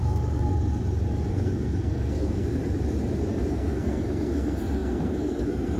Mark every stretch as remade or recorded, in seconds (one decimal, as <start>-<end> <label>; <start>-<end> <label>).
0.0-0.5 remade; 0.5-1.3 recorded; 1.3-2.6 remade; 2.6-3.5 recorded; 3.5-5.8 remade